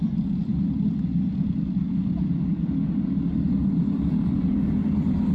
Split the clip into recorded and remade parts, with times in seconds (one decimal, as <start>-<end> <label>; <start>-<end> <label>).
0.0-0.5 recorded; 0.5-2.6 remade; 2.6-5.3 recorded